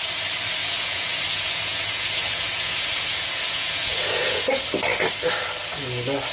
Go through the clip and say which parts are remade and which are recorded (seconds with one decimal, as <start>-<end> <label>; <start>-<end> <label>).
0.0-0.6 recorded; 0.6-4.4 remade; 4.4-6.3 recorded